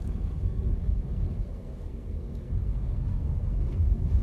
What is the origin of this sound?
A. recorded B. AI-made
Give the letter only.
B